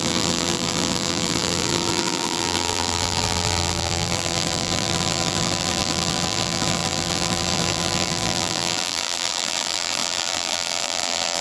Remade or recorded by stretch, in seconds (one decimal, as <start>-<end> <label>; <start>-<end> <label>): 0.0-11.4 remade